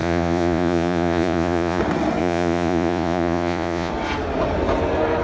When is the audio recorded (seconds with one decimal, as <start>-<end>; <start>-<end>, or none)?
1.8-2.2; 3.9-5.2